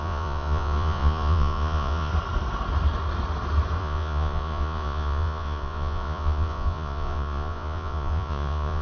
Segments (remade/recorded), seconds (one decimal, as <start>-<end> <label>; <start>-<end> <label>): 0.0-2.1 remade; 2.1-3.8 recorded; 3.8-8.8 remade